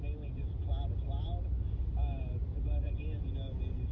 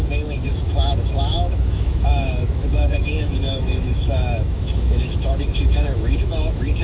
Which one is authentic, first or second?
first